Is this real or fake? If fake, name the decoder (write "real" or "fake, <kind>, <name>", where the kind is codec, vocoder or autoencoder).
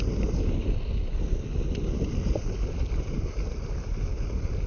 real